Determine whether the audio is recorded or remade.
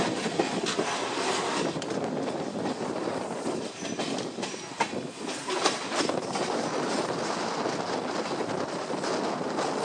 recorded